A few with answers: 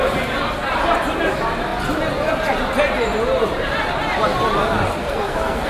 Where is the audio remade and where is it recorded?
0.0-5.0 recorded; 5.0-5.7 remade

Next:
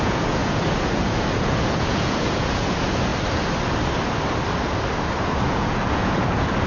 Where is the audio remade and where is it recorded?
0.0-3.1 remade; 3.1-5.5 recorded; 5.5-6.7 remade

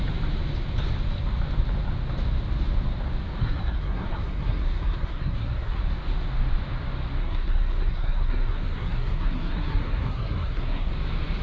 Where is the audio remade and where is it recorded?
0.0-3.4 recorded; 3.4-5.8 remade; 5.8-7.2 recorded; 7.2-10.9 remade; 10.9-11.4 recorded

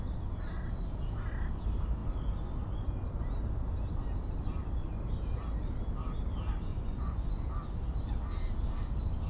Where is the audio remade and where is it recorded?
0.0-6.7 recorded; 6.7-7.3 remade; 7.3-9.3 recorded

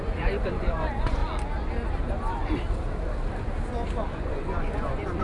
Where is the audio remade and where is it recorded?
0.0-1.2 remade; 1.2-4.1 recorded; 4.1-5.2 remade